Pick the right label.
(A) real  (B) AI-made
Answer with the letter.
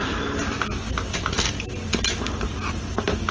A